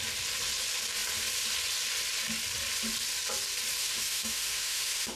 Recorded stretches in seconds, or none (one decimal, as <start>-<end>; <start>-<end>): 0.0-3.8